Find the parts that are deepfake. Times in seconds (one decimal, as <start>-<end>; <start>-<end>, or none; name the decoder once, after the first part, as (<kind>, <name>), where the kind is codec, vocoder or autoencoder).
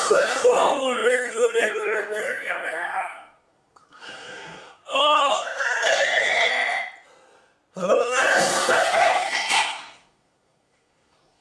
0.0-6.5 (codec, SNAC); 7.7-11.4